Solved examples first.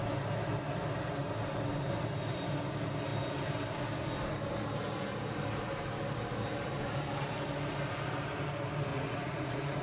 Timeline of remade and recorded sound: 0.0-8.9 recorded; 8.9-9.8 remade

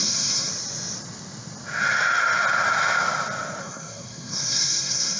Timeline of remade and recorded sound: 0.0-0.5 remade; 0.5-3.6 recorded; 3.6-5.2 remade

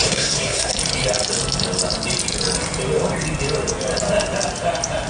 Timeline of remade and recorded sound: 0.0-0.7 remade; 0.7-5.1 recorded